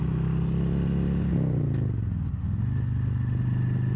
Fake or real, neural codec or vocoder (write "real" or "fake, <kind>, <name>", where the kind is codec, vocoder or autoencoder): real